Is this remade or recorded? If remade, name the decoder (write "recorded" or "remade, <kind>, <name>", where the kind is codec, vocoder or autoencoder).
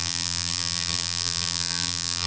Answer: remade, vocoder, BigVGAN v2